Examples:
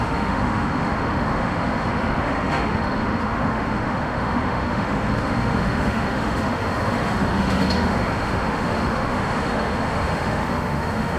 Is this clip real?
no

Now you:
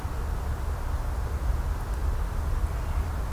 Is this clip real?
yes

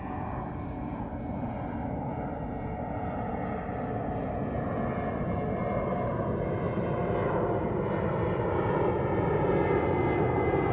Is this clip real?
yes